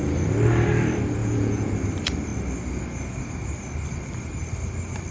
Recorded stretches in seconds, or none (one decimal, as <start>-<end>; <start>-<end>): 0.0-1.2; 1.7-5.1